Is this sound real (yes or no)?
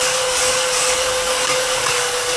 no